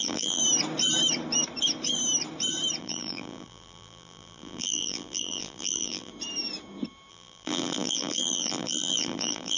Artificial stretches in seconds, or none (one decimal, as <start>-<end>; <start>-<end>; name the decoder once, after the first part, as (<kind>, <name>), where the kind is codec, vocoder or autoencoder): 0.0-0.4 (vocoder, BigVGAN v2); 2.8-6.1; 7.1-9.6